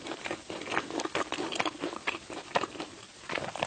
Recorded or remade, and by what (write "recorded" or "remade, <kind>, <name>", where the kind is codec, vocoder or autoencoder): recorded